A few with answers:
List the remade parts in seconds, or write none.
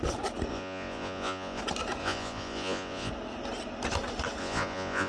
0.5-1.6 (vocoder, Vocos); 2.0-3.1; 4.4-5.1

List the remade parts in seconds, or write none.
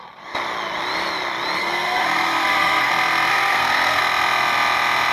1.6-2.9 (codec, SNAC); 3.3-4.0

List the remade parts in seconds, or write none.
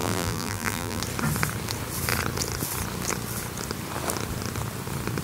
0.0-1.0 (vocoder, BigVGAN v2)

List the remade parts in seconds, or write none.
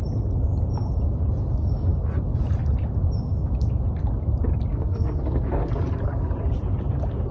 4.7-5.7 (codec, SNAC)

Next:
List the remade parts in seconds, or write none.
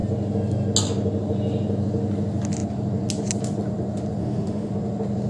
4.2-4.7 (autoencoder, DAC-VAE)